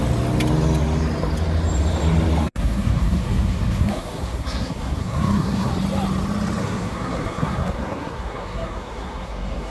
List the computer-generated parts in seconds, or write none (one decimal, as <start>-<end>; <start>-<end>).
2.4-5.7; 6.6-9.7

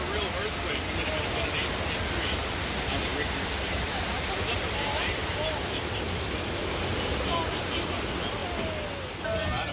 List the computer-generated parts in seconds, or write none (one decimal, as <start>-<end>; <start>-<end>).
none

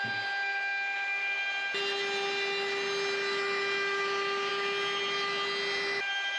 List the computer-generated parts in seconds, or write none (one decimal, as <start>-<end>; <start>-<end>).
none